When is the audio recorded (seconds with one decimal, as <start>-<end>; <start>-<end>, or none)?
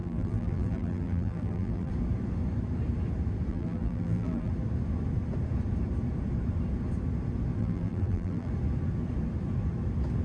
1.9-3.5; 4.5-7.6; 8.5-10.2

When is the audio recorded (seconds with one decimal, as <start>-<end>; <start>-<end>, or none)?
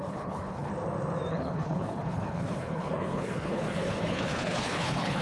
0.7-1.3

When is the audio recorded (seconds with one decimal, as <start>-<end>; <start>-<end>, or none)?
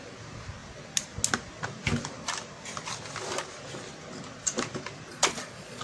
0.0-5.1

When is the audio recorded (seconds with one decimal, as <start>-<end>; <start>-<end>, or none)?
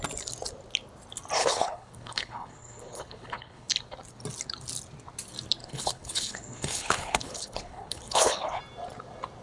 0.0-1.4; 3.7-5.6; 8.6-9.4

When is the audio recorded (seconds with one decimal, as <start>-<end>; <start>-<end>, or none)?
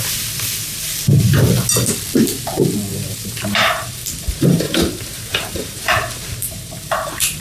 0.0-2.9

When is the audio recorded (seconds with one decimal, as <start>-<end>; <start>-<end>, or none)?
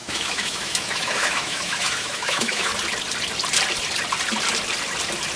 2.7-5.4